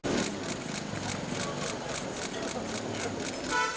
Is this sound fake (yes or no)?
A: no